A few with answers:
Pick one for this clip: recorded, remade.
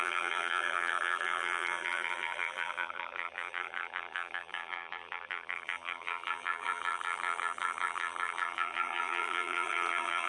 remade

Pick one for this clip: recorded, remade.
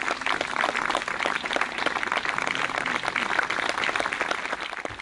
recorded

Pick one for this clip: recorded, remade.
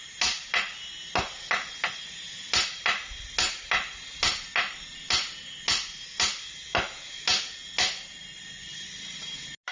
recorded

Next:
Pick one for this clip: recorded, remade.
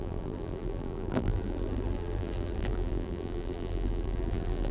remade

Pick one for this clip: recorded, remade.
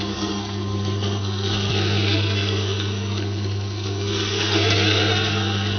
remade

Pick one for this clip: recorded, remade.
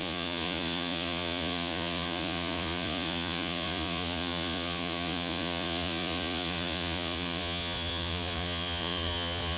remade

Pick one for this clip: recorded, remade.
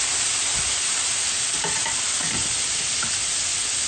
recorded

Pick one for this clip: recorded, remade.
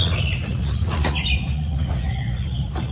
remade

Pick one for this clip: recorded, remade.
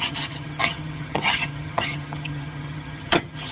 remade